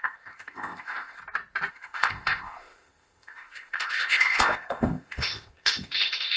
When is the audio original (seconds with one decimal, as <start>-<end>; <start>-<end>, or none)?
1.2-1.7